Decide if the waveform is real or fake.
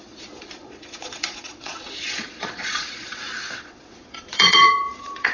fake